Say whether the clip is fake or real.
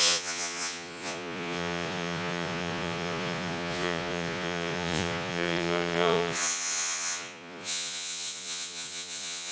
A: fake